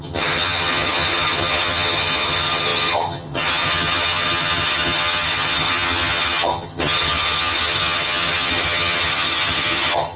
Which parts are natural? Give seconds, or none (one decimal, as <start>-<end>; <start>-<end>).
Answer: none

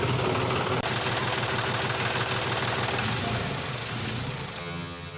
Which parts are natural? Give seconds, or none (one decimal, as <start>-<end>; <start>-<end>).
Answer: 0.0-4.6

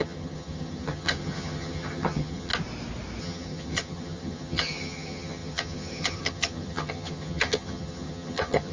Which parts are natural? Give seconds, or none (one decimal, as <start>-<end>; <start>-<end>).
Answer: 2.5-3.2